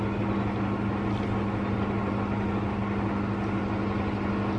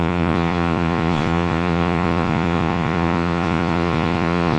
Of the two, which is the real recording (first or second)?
first